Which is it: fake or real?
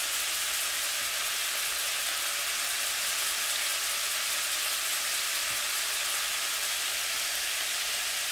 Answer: real